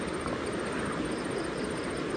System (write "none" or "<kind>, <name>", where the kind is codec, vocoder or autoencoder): none